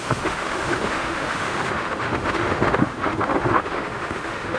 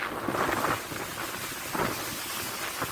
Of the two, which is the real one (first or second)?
second